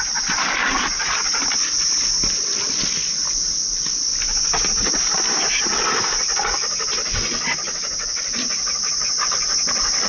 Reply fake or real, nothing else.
real